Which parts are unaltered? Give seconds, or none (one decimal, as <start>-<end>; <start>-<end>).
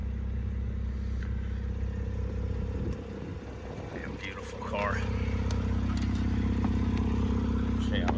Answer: 0.0-8.2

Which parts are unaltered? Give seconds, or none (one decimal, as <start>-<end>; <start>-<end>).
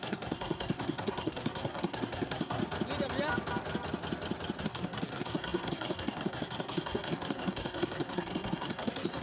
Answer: 2.6-4.6